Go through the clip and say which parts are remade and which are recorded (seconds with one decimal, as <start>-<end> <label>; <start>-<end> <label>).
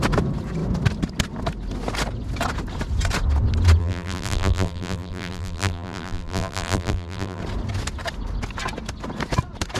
0.0-3.8 recorded; 3.8-7.4 remade; 7.4-9.8 recorded